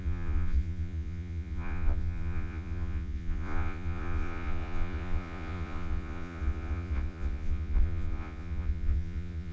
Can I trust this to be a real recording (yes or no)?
no